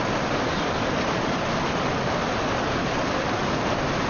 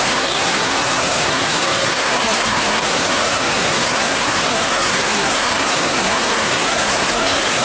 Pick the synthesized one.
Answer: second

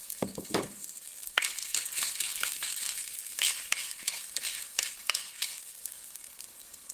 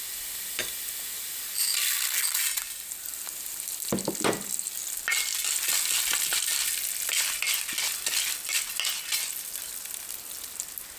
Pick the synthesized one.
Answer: first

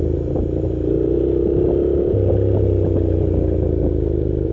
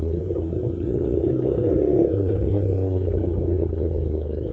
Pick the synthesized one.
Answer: second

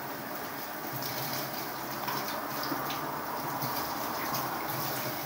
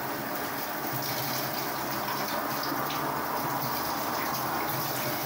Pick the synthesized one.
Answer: first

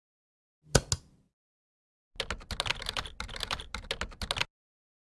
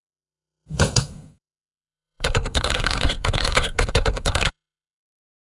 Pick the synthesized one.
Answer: second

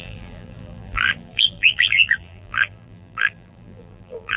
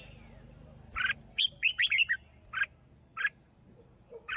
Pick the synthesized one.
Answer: first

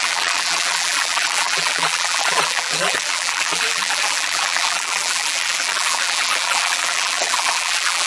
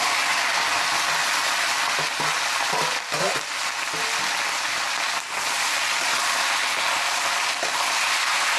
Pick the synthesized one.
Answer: first